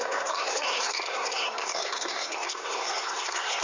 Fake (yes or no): yes